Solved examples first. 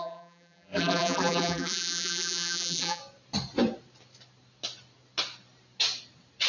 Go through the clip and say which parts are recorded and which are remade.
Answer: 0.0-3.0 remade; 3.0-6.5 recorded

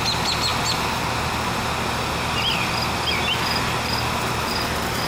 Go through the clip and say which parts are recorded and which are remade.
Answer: 0.0-5.1 recorded

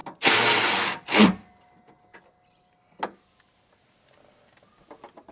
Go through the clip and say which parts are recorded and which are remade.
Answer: 0.0-5.3 recorded

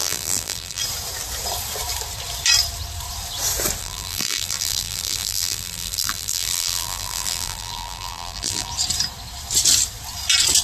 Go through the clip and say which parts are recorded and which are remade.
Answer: 0.0-0.8 remade; 0.8-3.8 recorded; 3.8-8.7 remade; 8.7-10.6 recorded

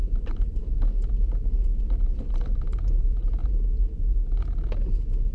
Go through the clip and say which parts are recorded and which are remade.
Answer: 0.0-0.6 remade; 0.6-1.2 recorded; 1.2-1.7 remade; 1.7-2.5 recorded; 2.5-3.4 remade; 3.4-5.3 recorded

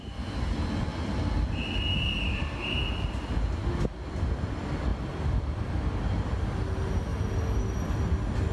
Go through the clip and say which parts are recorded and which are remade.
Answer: 0.0-4.9 recorded; 4.9-6.0 remade; 6.0-8.5 recorded

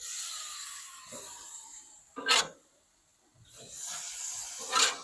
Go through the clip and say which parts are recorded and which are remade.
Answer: 0.0-1.7 recorded; 1.7-2.4 remade; 2.4-5.0 recorded

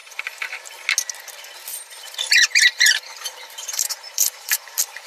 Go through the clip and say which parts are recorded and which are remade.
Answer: 0.0-0.6 remade; 0.6-1.7 recorded; 1.7-5.1 remade